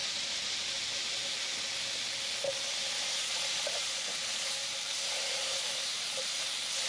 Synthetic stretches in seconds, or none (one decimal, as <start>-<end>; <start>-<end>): 4.6-6.5